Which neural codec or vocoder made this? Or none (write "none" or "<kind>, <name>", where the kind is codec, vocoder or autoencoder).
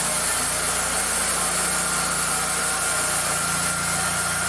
none